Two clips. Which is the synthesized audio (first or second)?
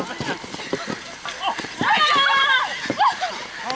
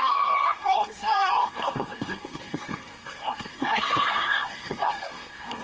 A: second